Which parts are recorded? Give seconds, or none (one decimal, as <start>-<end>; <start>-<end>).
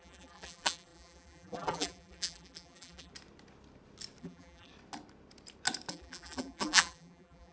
3.1-4.2; 4.7-5.9